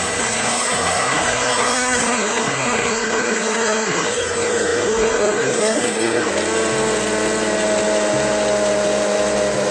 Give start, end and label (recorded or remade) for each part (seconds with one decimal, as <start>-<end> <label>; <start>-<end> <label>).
0.0-6.3 remade; 6.3-9.7 recorded